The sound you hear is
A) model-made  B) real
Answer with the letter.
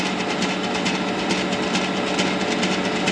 B